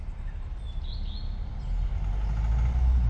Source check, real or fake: real